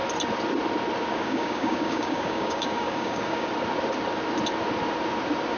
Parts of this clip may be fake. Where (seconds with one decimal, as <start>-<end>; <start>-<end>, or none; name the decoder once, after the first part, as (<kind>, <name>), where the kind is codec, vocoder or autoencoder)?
1.1-3.5 (codec, DAC)